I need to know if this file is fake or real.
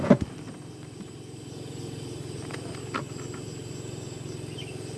real